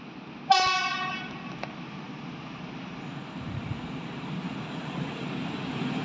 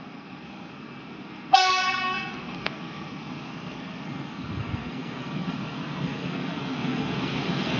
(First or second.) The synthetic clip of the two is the second